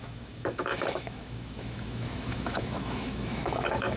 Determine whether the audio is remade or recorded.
remade